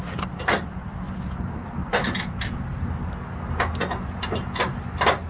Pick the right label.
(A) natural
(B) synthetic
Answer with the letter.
A